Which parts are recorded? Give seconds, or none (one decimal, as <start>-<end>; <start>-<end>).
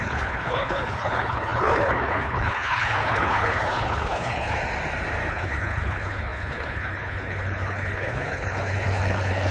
4.6-5.3